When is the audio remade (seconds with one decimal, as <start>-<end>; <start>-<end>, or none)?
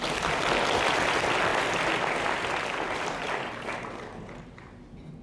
none